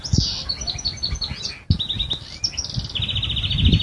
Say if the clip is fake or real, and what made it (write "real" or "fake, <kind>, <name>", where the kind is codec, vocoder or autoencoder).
real